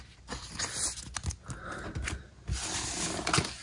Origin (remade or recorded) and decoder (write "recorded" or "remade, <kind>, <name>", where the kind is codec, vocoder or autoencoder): recorded